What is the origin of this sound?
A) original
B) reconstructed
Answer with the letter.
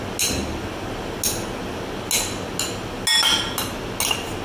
A